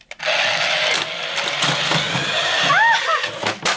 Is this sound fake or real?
real